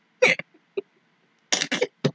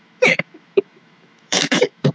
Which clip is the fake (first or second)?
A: second